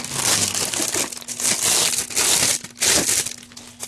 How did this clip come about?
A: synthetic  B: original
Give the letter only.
B